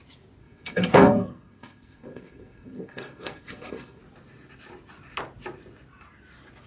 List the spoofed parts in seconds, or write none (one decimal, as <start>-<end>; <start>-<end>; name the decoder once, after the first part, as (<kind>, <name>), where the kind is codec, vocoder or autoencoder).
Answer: 0.4-4.0 (codec, SNAC)